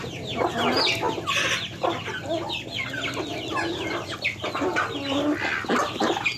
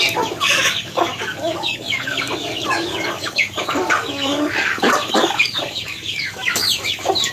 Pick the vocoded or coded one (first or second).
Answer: second